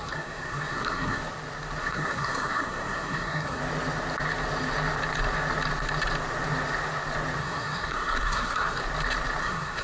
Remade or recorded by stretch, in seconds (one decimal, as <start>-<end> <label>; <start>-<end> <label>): 0.0-1.2 remade; 1.2-1.8 recorded; 1.8-3.6 remade; 3.6-7.4 recorded; 7.4-8.8 remade; 8.8-9.4 recorded; 9.4-9.8 remade